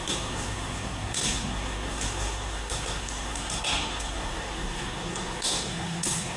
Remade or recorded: remade